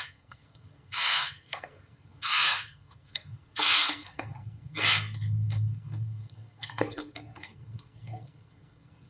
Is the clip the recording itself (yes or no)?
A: no